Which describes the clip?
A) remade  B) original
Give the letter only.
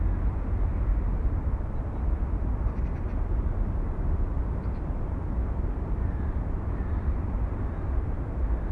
A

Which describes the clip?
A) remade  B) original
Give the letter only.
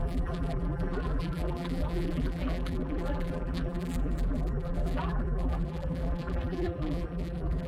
A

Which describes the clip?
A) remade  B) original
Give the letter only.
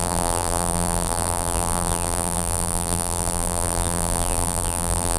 A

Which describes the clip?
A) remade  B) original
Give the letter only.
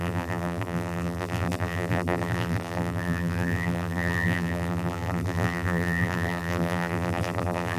A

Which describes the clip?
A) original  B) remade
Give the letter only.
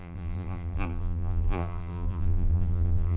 B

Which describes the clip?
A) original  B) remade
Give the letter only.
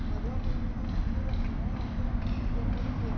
A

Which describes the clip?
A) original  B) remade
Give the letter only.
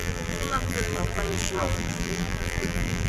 B